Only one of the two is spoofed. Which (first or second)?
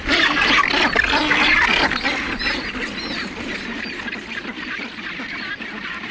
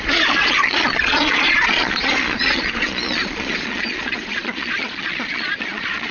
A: second